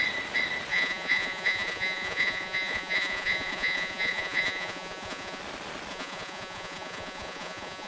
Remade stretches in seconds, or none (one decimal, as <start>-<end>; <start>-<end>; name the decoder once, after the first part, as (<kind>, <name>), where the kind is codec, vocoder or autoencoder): 0.7-5.4 (vocoder, Vocos); 5.9-7.9